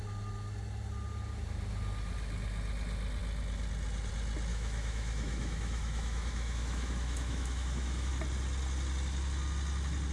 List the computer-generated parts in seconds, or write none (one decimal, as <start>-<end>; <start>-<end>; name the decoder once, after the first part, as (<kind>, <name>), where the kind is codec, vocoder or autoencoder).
4.5-8.1 (autoencoder, DAC-VAE)